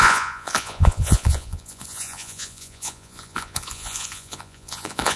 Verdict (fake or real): fake